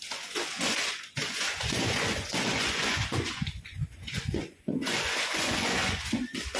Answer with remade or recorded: remade